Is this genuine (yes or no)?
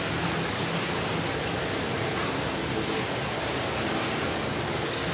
yes